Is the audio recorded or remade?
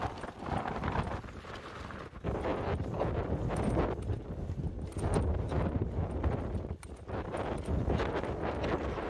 recorded